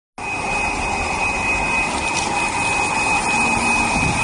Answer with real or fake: real